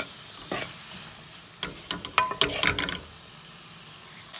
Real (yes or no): yes